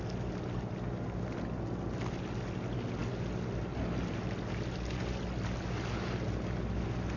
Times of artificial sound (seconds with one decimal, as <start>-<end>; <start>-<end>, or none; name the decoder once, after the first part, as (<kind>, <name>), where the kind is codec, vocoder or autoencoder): none